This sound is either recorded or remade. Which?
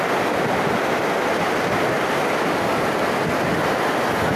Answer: recorded